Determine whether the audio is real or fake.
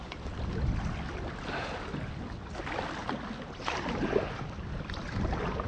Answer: real